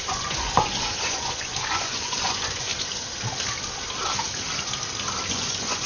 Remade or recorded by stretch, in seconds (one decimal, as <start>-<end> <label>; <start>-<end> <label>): 0.0-2.7 remade; 2.7-5.3 recorded; 5.3-5.9 remade